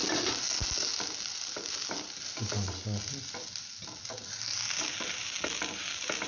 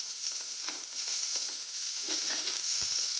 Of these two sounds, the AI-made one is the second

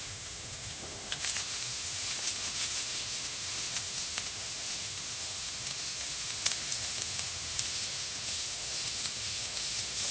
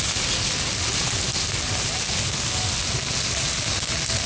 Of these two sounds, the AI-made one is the first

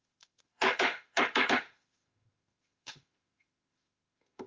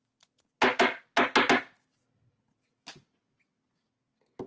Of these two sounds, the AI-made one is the first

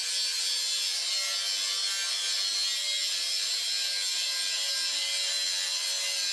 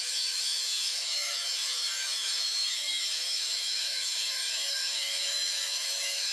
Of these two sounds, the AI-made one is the second